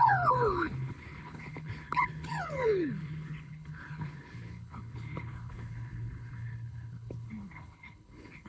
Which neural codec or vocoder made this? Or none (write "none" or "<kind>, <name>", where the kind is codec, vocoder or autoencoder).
codec, HILCodec